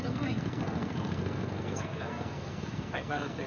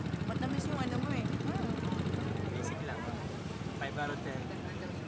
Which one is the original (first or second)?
second